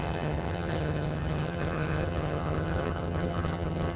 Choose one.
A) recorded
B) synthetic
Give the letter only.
B